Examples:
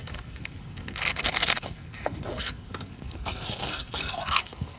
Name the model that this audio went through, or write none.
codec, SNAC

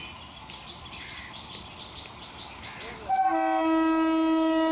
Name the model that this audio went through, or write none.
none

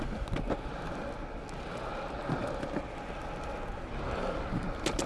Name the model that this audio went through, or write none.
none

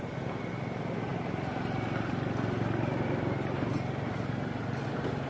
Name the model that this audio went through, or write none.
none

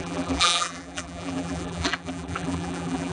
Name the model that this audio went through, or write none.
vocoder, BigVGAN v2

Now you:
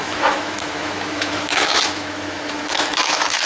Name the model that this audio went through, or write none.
autoencoder, DAC-VAE